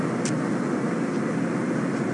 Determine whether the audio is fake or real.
real